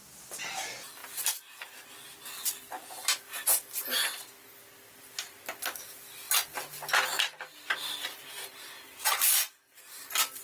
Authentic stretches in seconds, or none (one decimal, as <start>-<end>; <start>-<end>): 0.0-10.4